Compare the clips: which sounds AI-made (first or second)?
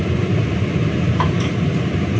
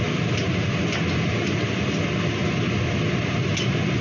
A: first